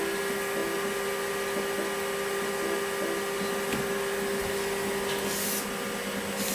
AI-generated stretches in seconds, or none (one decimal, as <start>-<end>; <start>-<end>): none